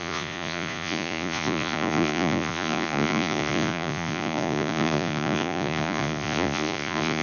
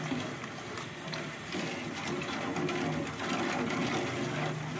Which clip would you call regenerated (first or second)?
first